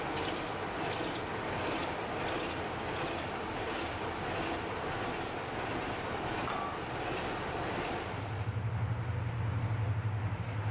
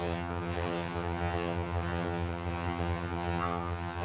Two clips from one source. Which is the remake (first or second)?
second